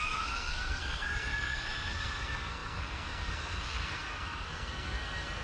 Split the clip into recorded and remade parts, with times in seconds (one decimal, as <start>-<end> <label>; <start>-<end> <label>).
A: 0.0-5.4 remade